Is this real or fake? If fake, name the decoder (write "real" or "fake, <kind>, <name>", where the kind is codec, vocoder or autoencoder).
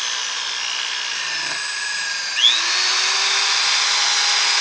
real